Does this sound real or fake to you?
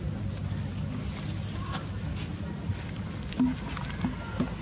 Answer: real